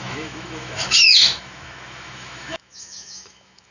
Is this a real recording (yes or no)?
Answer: no